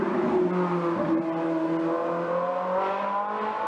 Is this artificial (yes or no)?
no